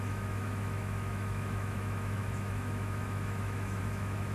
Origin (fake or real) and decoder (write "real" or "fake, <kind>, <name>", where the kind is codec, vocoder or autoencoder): fake, autoencoder, DAC-VAE